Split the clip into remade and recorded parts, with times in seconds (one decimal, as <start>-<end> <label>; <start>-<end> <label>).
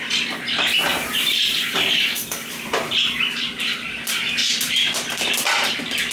0.0-0.9 recorded; 0.9-3.9 remade; 3.9-4.4 recorded; 4.4-6.1 remade